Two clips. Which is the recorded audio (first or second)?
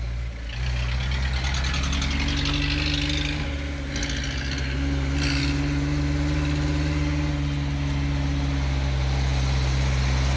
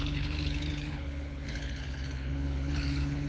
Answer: first